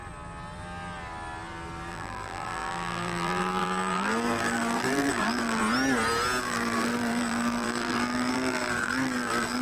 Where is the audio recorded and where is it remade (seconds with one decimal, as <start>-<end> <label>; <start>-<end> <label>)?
0.0-1.9 recorded; 1.9-5.6 remade; 5.6-6.4 recorded; 6.4-9.6 remade